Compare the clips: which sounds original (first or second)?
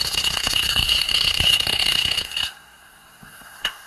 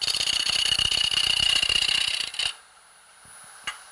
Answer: second